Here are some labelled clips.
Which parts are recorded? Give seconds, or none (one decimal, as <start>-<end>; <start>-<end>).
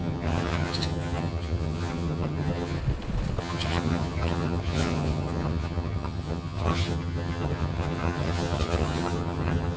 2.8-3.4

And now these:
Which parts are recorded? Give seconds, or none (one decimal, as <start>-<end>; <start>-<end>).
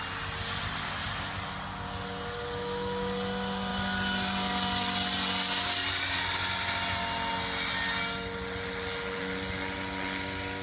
0.0-10.6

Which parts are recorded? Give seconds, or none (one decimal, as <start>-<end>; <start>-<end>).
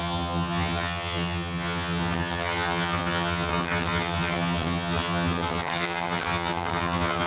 none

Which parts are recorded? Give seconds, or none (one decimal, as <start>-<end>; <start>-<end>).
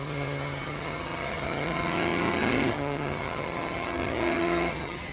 none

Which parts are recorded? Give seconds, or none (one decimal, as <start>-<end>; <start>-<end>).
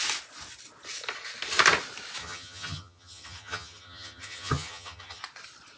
0.0-2.2; 5.2-5.8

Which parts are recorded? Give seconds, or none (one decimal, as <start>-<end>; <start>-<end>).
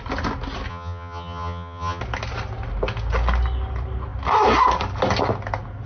0.0-0.7; 2.0-5.9